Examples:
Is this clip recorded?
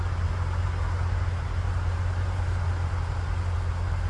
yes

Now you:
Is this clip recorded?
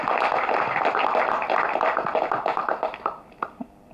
yes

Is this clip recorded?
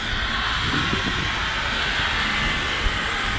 yes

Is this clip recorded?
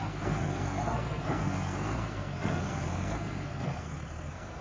no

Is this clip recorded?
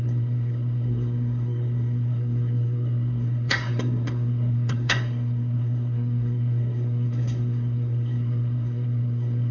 no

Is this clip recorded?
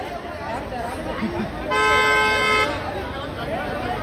yes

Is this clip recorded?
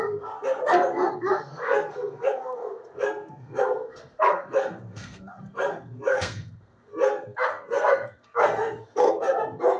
no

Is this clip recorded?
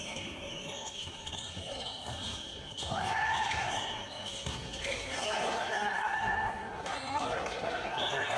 no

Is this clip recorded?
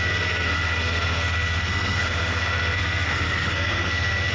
no